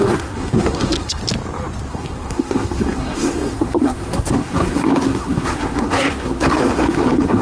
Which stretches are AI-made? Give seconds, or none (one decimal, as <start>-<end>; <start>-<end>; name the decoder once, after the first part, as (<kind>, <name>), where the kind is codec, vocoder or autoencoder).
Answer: 0.0-1.2 (codec, SNAC); 1.9-7.4